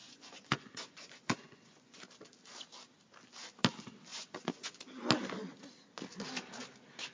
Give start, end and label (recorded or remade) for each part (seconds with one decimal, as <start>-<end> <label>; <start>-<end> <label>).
0.0-2.0 remade; 2.0-4.1 recorded; 4.1-4.7 remade; 4.7-7.1 recorded